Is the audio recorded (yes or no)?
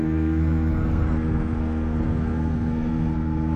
no